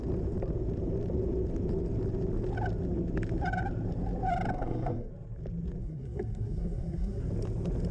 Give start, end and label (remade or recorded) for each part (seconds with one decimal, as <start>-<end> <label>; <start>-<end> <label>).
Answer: 0.0-4.5 recorded; 4.5-5.1 remade; 5.1-5.8 recorded; 5.8-7.2 remade; 7.2-7.9 recorded